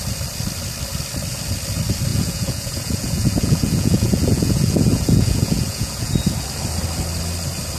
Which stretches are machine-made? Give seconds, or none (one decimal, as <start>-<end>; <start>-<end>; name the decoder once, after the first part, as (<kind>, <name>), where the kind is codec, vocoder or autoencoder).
2.1-6.1 (vocoder, Vocos)